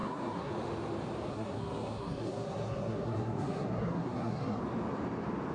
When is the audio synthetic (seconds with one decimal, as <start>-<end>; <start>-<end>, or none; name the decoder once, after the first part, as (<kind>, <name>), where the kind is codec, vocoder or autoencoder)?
0.0-0.5 (codec, SNAC); 1.3-4.6